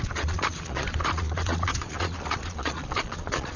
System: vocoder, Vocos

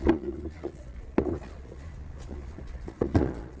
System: vocoder, Vocos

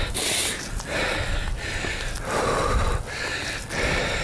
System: none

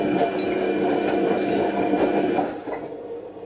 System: none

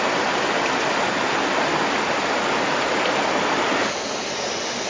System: none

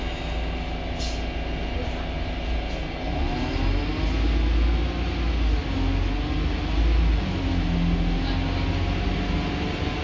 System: none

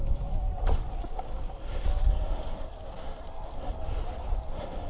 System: none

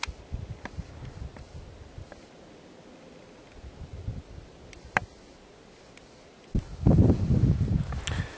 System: none